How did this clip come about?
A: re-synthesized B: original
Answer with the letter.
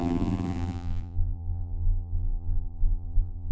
A